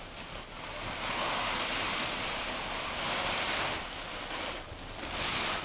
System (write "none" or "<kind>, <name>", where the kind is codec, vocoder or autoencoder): none